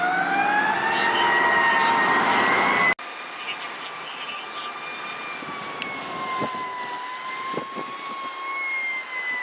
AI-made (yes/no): no